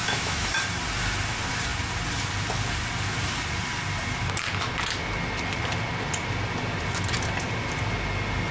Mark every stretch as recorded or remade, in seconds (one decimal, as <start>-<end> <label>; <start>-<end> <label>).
0.0-0.6 remade; 0.6-8.5 recorded